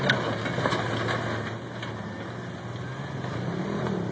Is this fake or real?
real